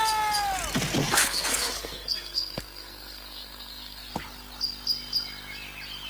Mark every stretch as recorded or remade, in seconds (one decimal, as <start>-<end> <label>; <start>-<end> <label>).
0.0-1.0 recorded; 1.0-4.1 remade; 4.1-6.1 recorded